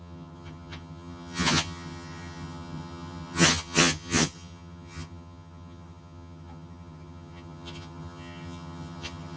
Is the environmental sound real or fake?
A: fake